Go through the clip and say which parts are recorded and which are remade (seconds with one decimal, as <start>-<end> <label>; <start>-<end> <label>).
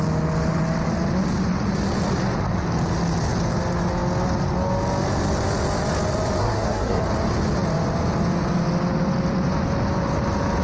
0.0-6.4 recorded; 6.4-7.0 remade; 7.0-10.6 recorded